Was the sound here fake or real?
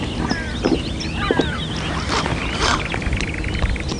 real